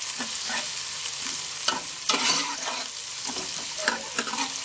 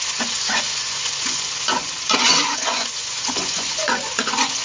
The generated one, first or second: second